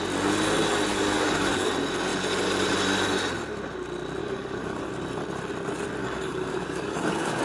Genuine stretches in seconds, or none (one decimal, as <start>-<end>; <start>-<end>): 0.0-0.9; 1.7-4.2; 4.9-6.0